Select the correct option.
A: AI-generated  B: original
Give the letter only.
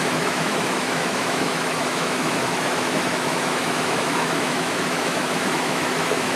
A